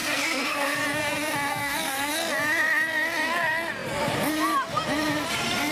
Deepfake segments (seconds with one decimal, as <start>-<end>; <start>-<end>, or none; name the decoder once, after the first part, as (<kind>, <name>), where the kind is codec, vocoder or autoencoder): 0.0-0.8 (codec, SNAC); 1.6-2.1